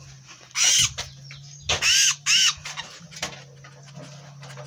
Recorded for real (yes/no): yes